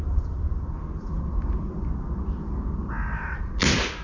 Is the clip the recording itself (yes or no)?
yes